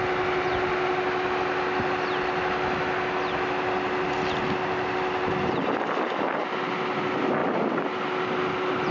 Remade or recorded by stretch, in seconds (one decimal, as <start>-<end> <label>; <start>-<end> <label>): 0.0-8.9 recorded